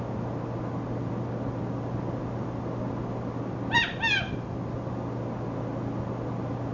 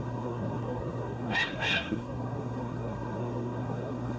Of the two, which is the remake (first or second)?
second